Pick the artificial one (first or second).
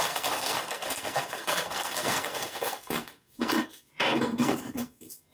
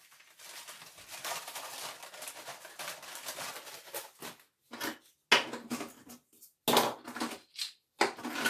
first